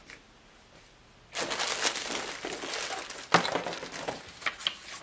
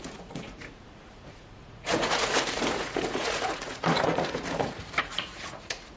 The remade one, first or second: second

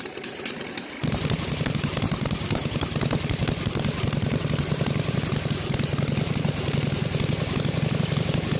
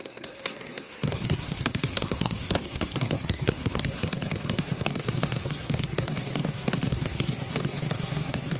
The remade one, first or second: second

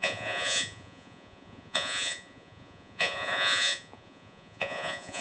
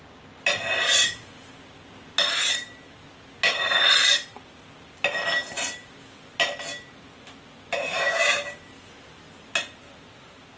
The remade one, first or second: first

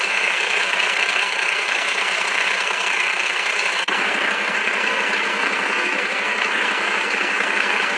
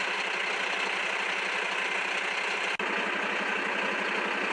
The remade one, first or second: first